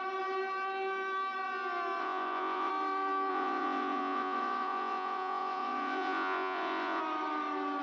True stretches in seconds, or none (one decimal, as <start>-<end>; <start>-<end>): 0.0-2.0; 2.7-3.3; 7.0-7.8